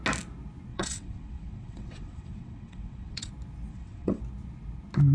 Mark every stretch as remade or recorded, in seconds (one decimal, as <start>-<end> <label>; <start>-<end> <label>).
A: 0.0-0.7 recorded; 0.7-3.3 remade; 3.3-3.7 recorded; 3.7-4.2 remade; 4.2-5.1 recorded